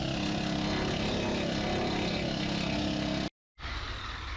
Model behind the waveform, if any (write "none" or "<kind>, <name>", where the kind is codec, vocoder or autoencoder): none